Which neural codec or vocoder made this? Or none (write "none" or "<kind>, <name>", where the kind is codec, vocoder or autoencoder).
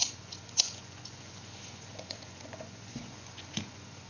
vocoder, Vocos